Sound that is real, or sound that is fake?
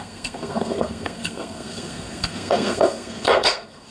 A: fake